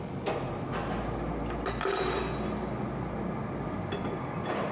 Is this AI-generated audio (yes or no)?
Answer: no